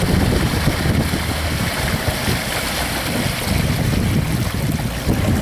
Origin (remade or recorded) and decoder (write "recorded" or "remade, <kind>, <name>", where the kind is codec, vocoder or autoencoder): recorded